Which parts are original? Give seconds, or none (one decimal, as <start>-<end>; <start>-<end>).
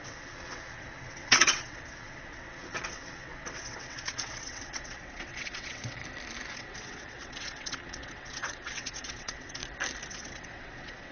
6.0-6.5; 9.6-10.1